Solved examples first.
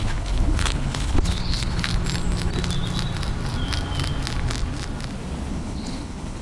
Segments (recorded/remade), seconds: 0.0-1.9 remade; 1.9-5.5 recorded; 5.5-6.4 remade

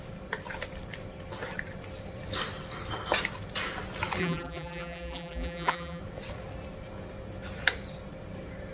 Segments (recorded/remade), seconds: 0.0-4.2 recorded; 4.2-6.0 remade; 6.0-8.7 recorded

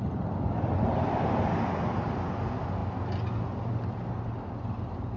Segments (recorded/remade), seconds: 0.0-5.2 recorded

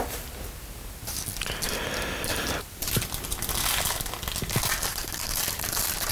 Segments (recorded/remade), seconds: 0.0-2.3 recorded; 2.3-3.0 remade; 3.0-4.9 recorded; 4.9-6.1 remade

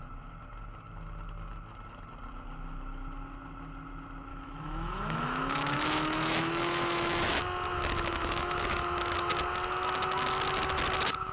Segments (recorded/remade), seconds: 0.0-4.3 recorded; 4.3-7.4 remade; 7.4-8.2 recorded; 8.2-8.8 remade; 8.8-11.3 recorded

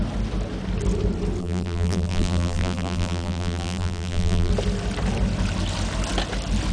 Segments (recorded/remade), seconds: 0.0-1.4 recorded; 1.4-4.5 remade; 4.5-6.7 recorded

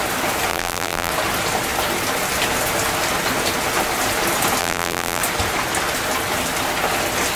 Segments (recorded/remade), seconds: 0.0-0.5 recorded; 0.5-1.1 remade; 1.1-4.6 recorded; 4.6-5.2 remade; 5.2-7.4 recorded